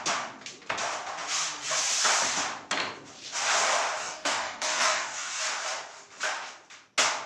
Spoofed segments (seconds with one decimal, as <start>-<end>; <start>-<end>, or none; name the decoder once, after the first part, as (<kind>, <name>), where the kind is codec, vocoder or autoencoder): 4.0-5.4 (codec, DAC)